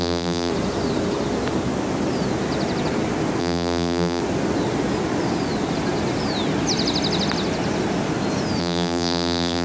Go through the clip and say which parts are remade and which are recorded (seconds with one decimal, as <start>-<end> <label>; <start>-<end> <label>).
0.0-0.5 remade; 0.5-3.4 recorded; 3.4-4.2 remade; 4.2-8.6 recorded; 8.6-9.6 remade